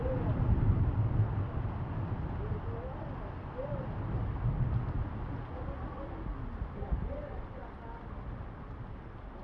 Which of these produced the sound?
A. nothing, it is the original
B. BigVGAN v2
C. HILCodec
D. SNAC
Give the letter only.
A